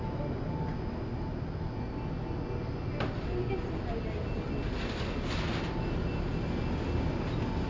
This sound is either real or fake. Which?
real